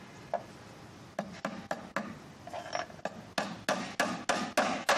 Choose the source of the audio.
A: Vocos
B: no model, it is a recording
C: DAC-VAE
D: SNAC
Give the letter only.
B